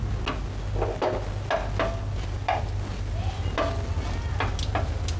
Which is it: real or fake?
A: real